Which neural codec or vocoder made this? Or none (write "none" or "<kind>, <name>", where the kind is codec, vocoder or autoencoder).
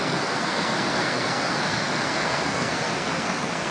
codec, SNAC